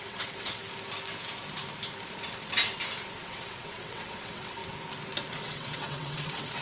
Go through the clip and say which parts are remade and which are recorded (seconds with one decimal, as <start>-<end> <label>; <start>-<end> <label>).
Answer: 0.0-0.6 remade; 0.6-3.2 recorded; 3.2-4.6 remade; 4.6-5.3 recorded; 5.3-6.6 remade